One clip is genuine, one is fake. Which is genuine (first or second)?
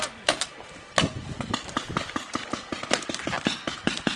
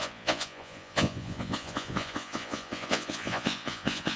first